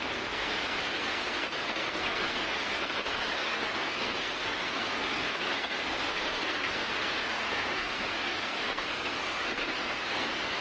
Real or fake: fake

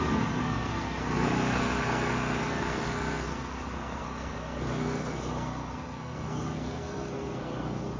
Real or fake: fake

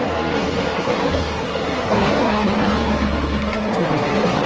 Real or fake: fake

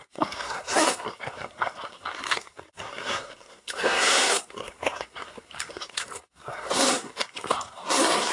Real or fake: fake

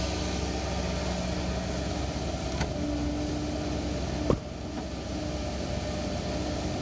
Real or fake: real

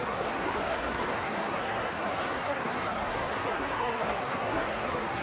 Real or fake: fake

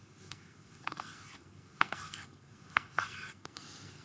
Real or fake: fake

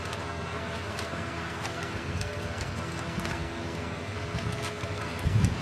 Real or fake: fake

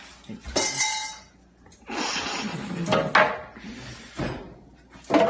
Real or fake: real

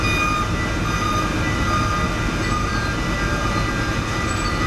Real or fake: real